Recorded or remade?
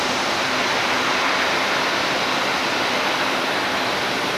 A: remade